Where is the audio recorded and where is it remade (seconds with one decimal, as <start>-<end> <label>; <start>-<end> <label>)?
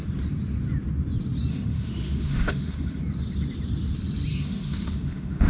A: 0.0-1.5 recorded; 1.5-3.0 remade; 3.0-4.3 recorded; 4.3-5.5 remade